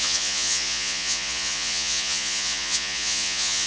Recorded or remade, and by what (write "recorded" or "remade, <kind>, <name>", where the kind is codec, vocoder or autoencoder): remade, vocoder, Vocos